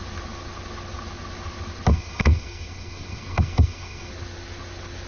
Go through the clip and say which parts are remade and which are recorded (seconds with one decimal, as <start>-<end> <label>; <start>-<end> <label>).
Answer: 0.0-1.9 recorded; 1.9-4.1 remade; 4.1-5.1 recorded